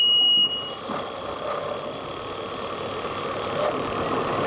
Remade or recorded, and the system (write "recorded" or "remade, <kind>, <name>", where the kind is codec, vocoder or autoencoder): recorded